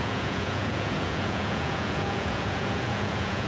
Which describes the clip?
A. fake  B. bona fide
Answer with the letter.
A